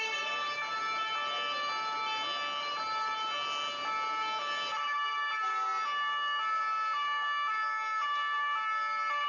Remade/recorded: recorded